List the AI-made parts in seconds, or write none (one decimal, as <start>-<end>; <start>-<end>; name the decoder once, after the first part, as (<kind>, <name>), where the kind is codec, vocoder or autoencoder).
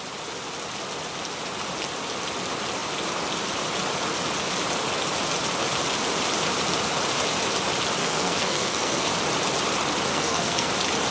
8.0-9.1 (codec, SNAC); 10.1-10.7